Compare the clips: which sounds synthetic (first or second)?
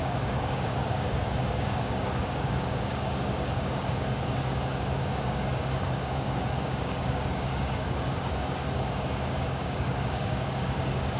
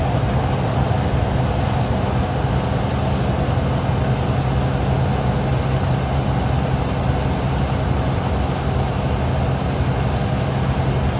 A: first